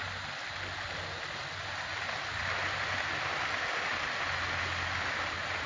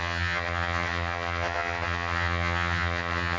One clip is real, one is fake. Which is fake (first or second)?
second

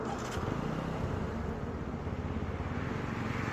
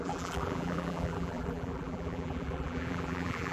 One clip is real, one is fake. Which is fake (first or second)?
second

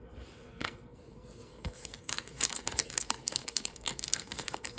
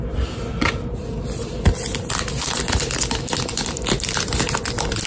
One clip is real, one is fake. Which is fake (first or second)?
first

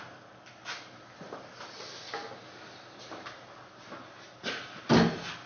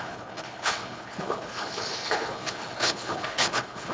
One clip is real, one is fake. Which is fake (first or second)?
second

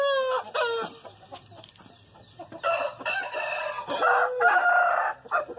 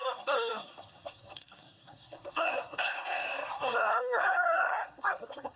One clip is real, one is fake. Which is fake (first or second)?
second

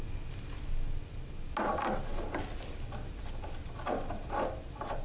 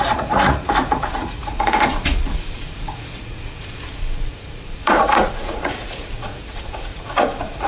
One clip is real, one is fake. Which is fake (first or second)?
second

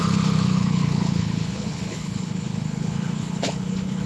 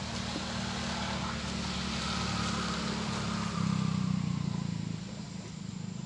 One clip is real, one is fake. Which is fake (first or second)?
first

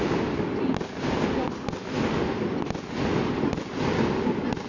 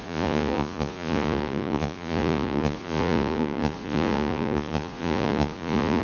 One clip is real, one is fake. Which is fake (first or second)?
second